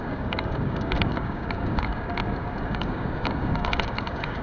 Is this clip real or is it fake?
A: fake